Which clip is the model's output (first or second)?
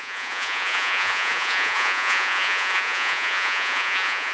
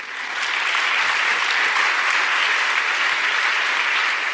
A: first